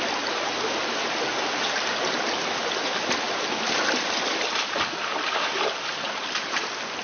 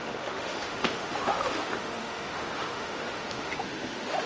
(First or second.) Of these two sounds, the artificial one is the second